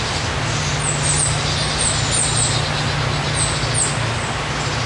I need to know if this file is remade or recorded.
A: recorded